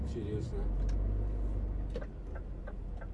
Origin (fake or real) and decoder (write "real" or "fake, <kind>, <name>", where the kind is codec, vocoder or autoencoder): real